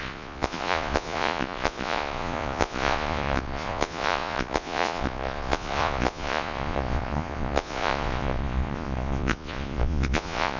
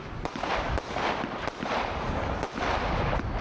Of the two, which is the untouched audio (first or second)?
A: second